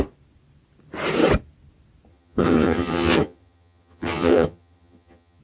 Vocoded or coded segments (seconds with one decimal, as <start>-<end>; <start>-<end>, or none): 2.1-5.4